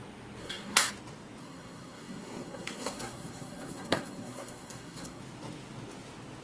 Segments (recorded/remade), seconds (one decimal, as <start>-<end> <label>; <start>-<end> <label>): 0.0-0.4 recorded; 0.4-0.9 remade; 0.9-1.4 recorded; 1.4-5.2 remade; 5.2-6.4 recorded